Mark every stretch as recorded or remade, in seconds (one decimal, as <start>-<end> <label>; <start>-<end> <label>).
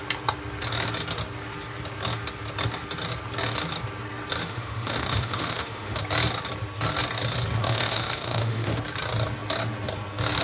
0.0-4.4 recorded; 4.4-6.0 remade; 6.0-7.6 recorded; 7.6-8.8 remade; 8.8-10.4 recorded